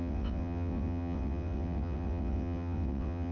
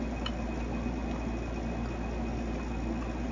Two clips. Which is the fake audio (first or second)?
first